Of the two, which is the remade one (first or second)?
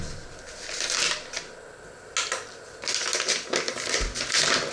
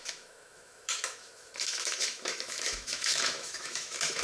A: second